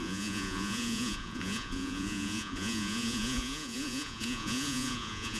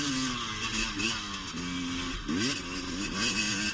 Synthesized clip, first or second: first